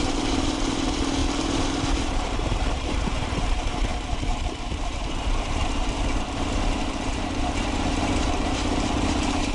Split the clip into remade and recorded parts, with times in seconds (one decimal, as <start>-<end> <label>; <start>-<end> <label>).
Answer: 0.0-9.5 remade